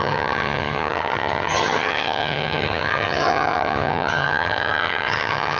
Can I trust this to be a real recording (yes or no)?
no